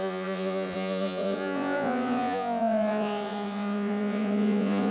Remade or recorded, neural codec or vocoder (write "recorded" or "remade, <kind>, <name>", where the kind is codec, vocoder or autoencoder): remade, vocoder, Vocos